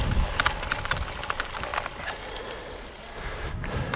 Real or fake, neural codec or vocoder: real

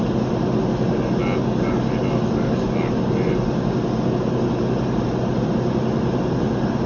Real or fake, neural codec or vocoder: real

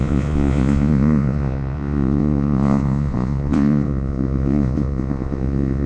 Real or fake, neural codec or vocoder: fake, vocoder, Vocos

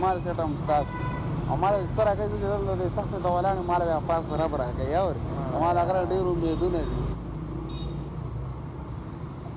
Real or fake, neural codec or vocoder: real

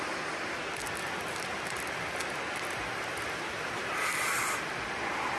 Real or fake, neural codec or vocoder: real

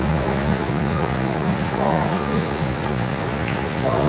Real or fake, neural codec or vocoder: fake, vocoder, Vocos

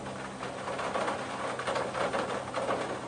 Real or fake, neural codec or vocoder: real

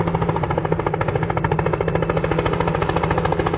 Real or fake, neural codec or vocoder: real